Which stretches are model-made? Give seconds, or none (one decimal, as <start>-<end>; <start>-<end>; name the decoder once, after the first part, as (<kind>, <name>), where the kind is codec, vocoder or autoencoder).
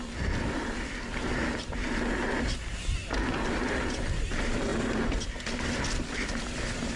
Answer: none